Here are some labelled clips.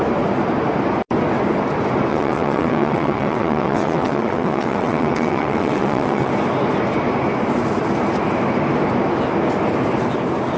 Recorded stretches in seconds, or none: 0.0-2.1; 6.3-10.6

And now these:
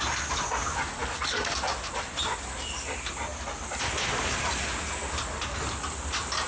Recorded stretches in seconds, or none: 0.0-6.5

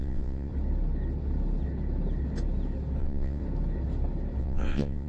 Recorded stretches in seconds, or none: 0.5-3.0; 3.4-4.4

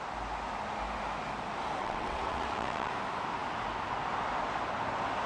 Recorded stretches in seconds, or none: 0.0-1.8; 2.9-5.3

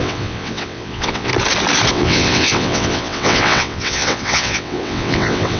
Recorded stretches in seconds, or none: 1.3-1.9

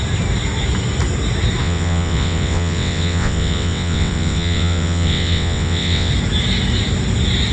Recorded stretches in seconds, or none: 0.0-1.6; 6.1-7.5

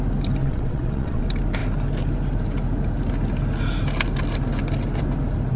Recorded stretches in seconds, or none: 0.0-0.4; 1.2-5.6